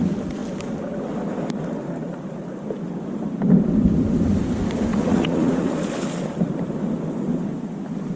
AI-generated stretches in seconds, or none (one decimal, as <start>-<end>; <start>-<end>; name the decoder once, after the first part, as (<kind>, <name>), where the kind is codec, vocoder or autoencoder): 4.9-5.7 (vocoder, Vocos)